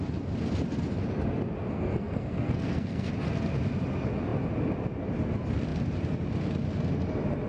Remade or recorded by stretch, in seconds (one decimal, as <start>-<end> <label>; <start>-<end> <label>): 0.0-1.6 recorded; 1.6-3.1 remade; 3.1-7.5 recorded

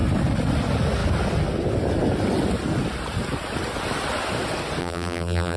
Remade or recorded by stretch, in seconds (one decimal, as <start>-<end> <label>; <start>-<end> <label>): 0.0-4.8 recorded; 4.8-5.6 remade

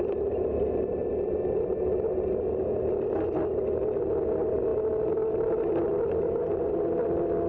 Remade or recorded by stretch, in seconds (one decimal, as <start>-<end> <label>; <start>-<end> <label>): 0.0-7.5 recorded